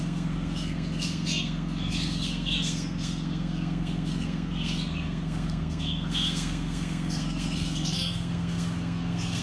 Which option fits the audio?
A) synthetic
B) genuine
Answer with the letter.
A